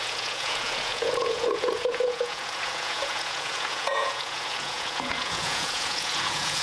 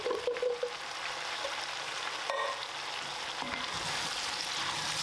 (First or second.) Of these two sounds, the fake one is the first